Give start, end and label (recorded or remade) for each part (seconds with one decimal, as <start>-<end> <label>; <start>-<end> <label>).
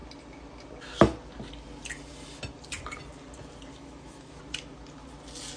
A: 0.0-3.7 recorded; 3.7-4.3 remade; 4.3-5.6 recorded